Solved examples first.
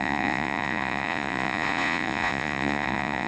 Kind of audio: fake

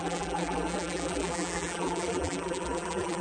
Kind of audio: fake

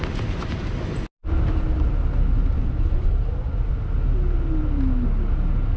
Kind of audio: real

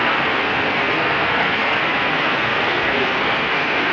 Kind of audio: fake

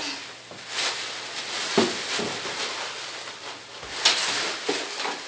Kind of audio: real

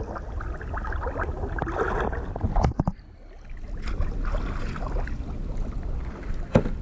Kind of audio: real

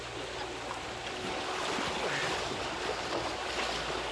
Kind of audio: real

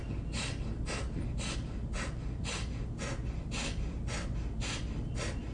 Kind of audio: real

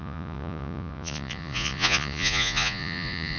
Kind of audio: fake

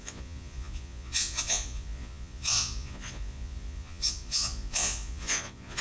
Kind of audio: fake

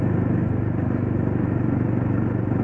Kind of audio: real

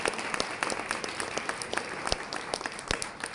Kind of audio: real